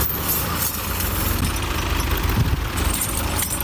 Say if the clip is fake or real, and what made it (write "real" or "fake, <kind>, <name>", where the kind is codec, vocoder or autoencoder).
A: real